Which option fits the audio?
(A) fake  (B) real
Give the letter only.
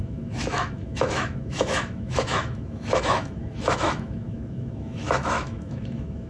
A